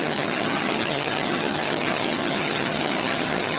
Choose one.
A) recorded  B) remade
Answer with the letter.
B